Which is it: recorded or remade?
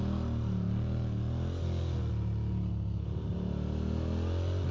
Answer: recorded